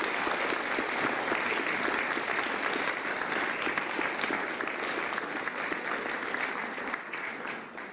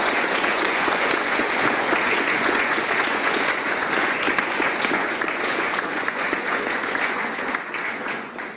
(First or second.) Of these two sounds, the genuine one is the first